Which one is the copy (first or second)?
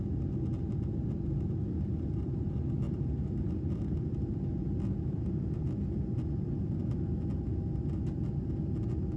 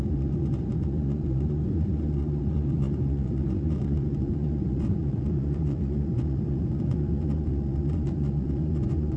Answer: second